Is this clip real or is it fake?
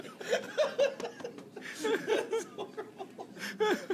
real